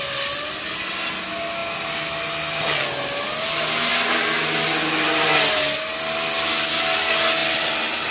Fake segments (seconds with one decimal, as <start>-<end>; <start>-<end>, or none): none